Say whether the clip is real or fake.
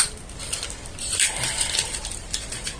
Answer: real